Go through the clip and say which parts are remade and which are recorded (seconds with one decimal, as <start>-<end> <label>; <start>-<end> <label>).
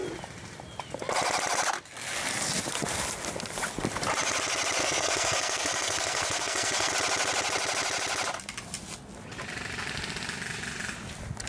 0.0-4.8 recorded; 4.8-6.9 remade; 6.9-11.5 recorded